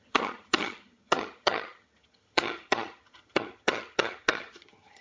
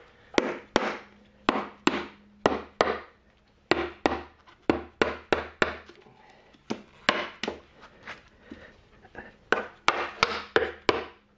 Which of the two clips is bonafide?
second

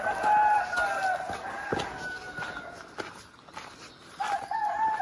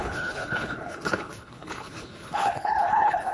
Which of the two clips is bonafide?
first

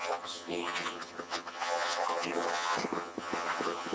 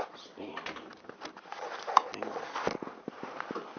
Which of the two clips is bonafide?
second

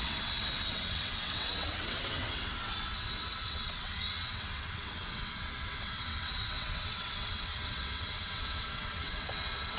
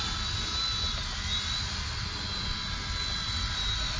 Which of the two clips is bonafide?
second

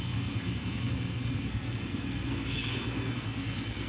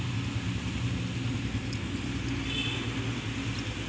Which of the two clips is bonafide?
second